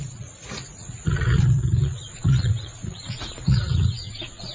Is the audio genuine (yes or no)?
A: no